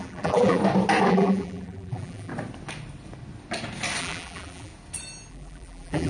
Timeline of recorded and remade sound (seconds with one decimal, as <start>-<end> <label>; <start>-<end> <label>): 0.0-0.6 remade; 0.6-1.1 recorded; 1.1-2.3 remade; 2.3-4.0 recorded; 4.0-4.7 remade; 4.7-5.3 recorded; 5.3-6.1 remade